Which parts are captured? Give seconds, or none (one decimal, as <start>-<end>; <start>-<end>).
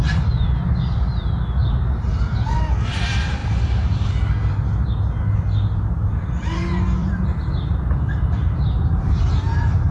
0.0-1.6; 2.2-7.0; 9.2-9.9